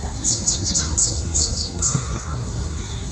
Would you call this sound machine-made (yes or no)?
yes